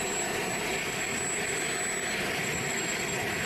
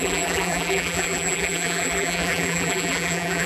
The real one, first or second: first